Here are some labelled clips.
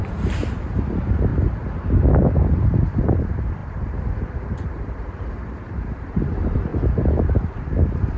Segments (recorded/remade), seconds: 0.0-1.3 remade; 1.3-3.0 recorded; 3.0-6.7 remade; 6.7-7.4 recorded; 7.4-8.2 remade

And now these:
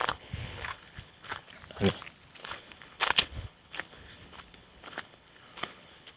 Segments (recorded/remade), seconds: 0.0-1.5 remade; 1.5-2.4 recorded; 2.4-6.2 remade

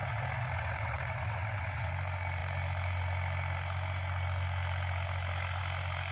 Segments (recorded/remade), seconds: 0.0-1.9 remade; 1.9-6.1 recorded

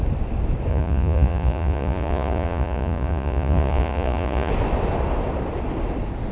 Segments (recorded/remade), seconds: 0.0-0.7 recorded; 0.7-4.5 remade; 4.5-6.3 recorded

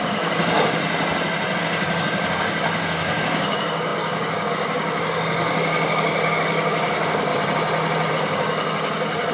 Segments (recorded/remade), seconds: 0.0-0.8 remade; 0.8-1.6 recorded; 1.6-7.3 remade; 7.3-8.1 recorded; 8.1-9.3 remade